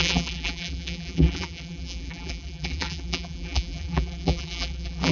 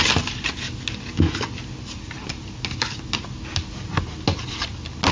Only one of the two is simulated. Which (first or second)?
first